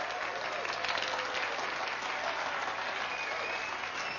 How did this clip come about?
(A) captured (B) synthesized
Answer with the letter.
A